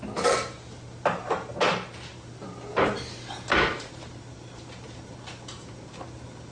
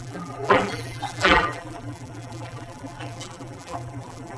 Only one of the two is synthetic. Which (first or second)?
second